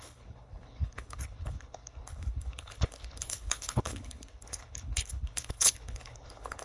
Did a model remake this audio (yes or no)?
yes